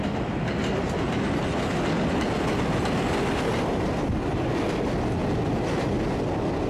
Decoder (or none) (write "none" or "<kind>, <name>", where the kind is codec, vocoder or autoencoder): none